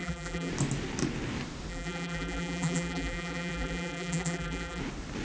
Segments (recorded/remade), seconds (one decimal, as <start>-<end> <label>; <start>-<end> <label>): 0.0-0.5 remade; 0.5-1.7 recorded; 1.7-4.8 remade; 4.8-5.2 recorded